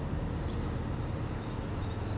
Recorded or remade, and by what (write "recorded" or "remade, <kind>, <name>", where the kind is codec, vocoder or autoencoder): recorded